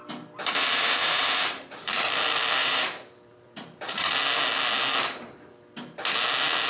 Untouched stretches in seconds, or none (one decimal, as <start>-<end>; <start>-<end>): 0.0-0.7; 2.0-2.6; 4.0-6.7